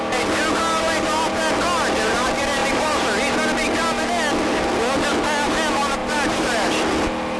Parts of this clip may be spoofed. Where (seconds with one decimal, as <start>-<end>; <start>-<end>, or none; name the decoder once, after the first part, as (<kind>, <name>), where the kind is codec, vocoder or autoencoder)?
2.6-3.2 (vocoder, BigVGAN v2); 6.0-6.7